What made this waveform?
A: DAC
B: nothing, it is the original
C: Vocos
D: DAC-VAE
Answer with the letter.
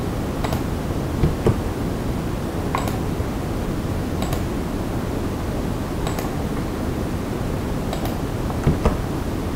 B